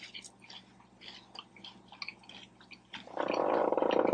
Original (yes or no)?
yes